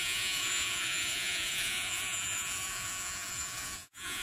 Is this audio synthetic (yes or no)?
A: yes